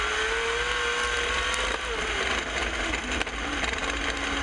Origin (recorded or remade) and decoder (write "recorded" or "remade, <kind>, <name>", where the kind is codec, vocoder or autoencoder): recorded